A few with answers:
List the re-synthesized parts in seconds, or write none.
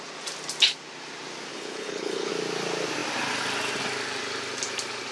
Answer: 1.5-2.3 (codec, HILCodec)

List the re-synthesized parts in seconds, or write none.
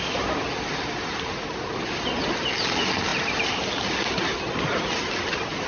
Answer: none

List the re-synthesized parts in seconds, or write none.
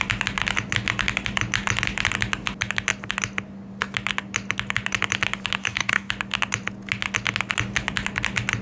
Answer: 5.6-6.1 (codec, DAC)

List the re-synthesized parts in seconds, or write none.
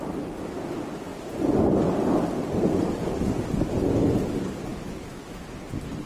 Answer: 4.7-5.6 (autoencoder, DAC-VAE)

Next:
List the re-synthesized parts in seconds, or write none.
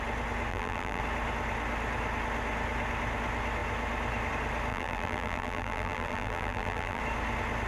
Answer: 0.5-1.0 (vocoder, BigVGAN v2); 4.7-7.0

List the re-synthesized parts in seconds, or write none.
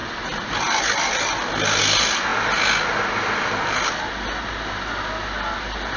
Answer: none